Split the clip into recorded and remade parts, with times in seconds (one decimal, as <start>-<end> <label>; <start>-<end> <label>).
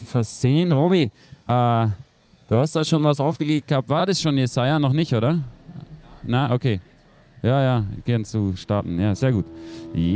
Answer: 0.0-1.5 remade; 1.5-2.2 recorded; 2.2-3.6 remade; 3.6-10.2 recorded